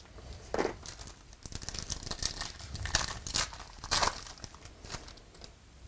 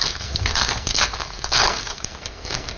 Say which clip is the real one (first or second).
first